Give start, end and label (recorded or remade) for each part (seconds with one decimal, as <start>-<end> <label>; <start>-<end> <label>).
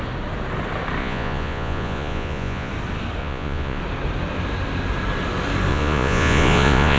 0.0-1.0 recorded; 1.0-2.7 remade; 2.7-3.2 recorded; 3.2-3.8 remade; 3.8-5.7 recorded; 5.7-7.0 remade